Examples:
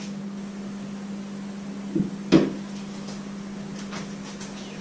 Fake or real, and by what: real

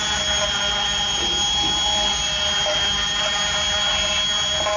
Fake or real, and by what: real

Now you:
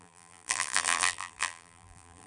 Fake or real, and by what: fake, vocoder, BigVGAN v2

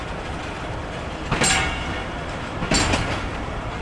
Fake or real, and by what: real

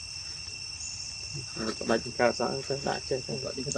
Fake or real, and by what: real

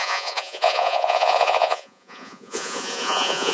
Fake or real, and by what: fake, vocoder, Vocos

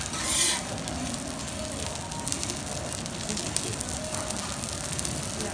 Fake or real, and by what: real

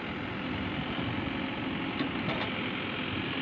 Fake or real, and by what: real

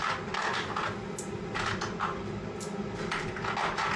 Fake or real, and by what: real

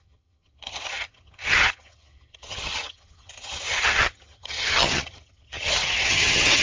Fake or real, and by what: fake, vocoder, HiFi-GAN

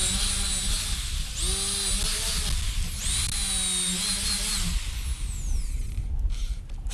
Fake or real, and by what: real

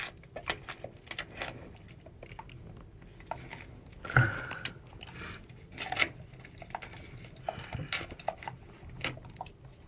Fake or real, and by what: real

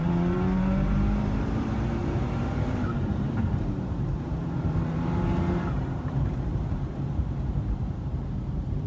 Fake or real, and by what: fake, vocoder, BigVGAN v2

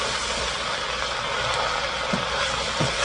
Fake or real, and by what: real